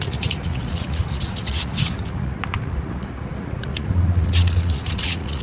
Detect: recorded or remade remade